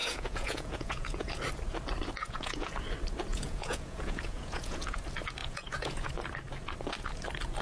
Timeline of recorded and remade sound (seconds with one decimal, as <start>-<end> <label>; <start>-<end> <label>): 0.0-1.4 remade; 1.4-2.2 recorded; 2.2-2.7 remade; 2.7-3.3 recorded; 3.3-5.0 remade; 5.0-5.4 recorded; 5.4-6.1 remade; 6.1-7.6 recorded